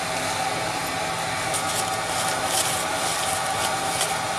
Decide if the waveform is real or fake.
real